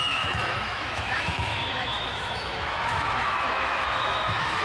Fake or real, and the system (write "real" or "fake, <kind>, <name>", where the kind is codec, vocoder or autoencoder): fake, autoencoder, DAC-VAE